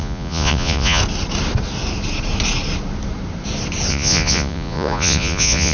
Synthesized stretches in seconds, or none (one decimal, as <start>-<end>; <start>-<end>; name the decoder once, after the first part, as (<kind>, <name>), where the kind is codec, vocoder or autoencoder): 0.0-1.0 (vocoder, Vocos); 3.9-5.7